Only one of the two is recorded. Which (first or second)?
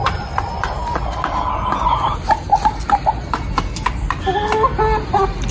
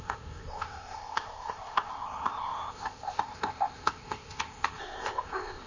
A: first